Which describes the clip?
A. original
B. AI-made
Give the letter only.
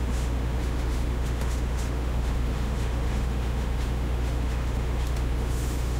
B